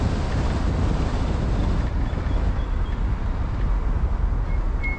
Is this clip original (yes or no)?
yes